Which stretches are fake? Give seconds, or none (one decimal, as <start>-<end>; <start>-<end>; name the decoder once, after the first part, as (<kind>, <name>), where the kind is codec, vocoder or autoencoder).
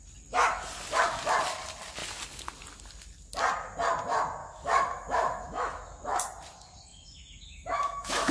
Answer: 4.4-6.2 (autoencoder, DAC-VAE); 6.9-8.3